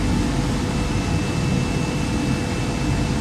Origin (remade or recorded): recorded